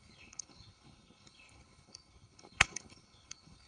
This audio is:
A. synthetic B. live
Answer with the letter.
A